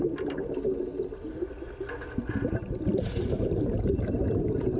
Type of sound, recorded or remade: recorded